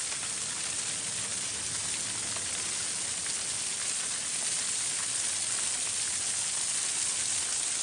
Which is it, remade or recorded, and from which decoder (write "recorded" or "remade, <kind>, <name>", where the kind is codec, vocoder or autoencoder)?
recorded